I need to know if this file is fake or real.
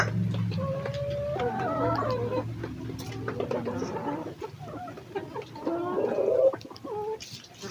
real